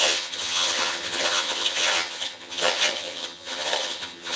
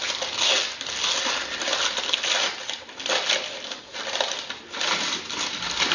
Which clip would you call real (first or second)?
second